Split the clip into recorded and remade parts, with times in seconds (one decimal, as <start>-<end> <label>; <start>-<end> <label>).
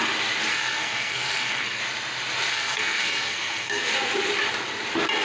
0.0-0.5 recorded; 0.5-1.8 remade; 1.8-2.5 recorded; 2.5-3.9 remade; 3.9-5.2 recorded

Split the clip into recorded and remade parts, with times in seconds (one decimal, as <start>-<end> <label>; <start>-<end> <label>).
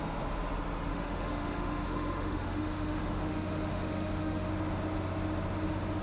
0.0-0.9 recorded; 0.9-4.5 remade; 4.5-6.0 recorded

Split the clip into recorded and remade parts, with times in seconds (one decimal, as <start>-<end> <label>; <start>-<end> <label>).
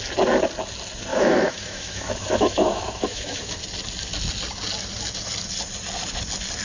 0.0-1.1 recorded; 1.1-3.6 remade; 3.6-6.6 recorded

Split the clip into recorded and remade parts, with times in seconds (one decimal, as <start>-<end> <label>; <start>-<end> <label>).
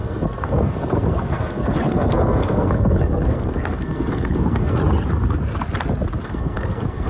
0.0-4.8 remade; 4.8-6.2 recorded; 6.2-7.1 remade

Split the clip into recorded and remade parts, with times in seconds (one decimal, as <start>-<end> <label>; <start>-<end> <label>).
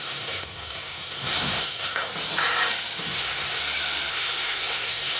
0.0-2.1 remade; 2.1-3.0 recorded; 3.0-3.6 remade; 3.6-4.1 recorded; 4.1-5.2 remade